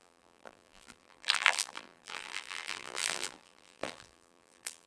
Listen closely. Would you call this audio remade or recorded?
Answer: remade